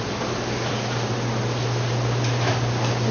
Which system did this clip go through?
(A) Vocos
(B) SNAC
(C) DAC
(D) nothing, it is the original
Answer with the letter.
D